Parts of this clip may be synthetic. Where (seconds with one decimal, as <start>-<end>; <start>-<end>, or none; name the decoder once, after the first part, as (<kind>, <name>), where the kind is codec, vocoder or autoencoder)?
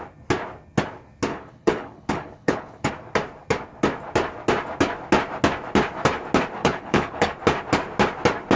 1.3-2.9 (codec, HILCodec); 6.6-7.3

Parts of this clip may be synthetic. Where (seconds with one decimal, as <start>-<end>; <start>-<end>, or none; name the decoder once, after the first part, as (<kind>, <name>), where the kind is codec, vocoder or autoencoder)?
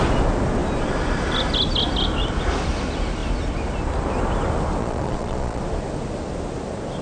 4.8-5.6 (vocoder, Vocos)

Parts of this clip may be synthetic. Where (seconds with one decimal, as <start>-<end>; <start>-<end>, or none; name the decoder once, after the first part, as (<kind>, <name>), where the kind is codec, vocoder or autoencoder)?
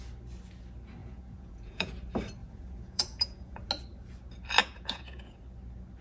1.0-1.9 (vocoder, Vocos); 2.4-3.7; 4.6-5.4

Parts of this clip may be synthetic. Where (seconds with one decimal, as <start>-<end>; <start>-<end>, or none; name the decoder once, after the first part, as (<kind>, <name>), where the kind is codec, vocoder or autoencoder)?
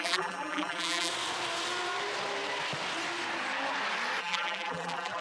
0.0-1.1 (vocoder, BigVGAN v2); 4.2-5.2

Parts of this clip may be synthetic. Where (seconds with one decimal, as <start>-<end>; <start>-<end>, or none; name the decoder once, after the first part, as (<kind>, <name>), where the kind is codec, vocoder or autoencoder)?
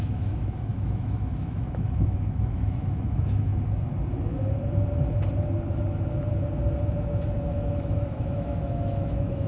0.0-3.5 (autoencoder, DAC-VAE); 7.5-9.5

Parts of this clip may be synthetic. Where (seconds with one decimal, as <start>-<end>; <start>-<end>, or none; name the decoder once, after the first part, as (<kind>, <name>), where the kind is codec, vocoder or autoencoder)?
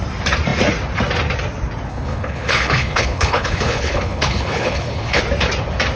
1.9-5.2 (codec, HILCodec)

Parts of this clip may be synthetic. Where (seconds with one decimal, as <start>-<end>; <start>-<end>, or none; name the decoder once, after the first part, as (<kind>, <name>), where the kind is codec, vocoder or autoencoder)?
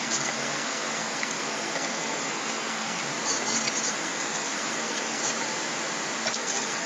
0.0-3.0 (codec, SNAC); 3.9-5.2; 6.3-6.9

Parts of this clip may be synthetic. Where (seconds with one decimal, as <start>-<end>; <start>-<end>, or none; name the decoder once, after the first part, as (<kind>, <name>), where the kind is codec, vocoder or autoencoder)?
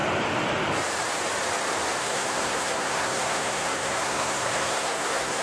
2.0-5.4 (codec, SNAC)